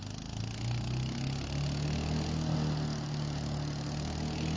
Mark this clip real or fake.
real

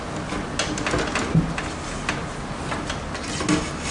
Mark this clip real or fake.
real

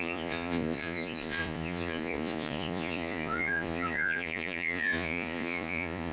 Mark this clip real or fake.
fake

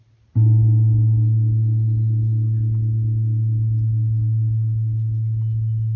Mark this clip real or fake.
real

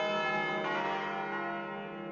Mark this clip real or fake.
real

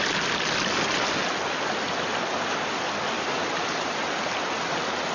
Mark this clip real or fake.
real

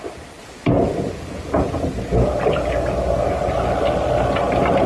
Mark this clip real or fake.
real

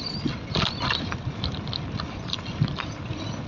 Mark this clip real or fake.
real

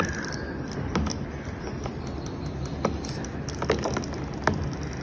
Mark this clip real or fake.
real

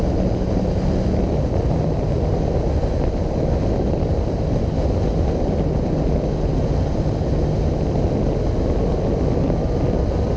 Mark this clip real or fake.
real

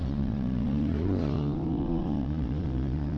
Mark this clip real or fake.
fake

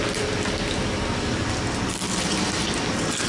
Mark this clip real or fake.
real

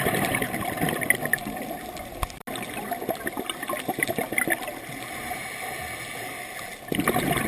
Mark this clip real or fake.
real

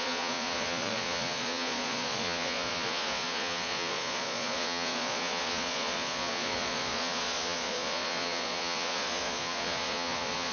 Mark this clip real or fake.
fake